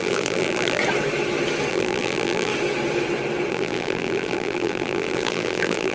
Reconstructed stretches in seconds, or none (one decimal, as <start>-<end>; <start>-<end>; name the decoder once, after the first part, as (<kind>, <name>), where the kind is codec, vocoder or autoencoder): 0.0-0.8 (vocoder, BigVGAN v2); 1.7-2.5; 3.5-5.9